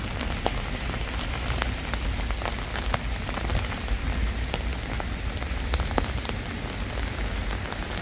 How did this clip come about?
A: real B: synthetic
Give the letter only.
A